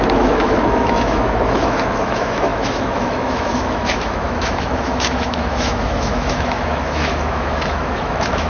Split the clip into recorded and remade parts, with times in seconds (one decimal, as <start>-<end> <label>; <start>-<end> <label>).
0.0-8.5 remade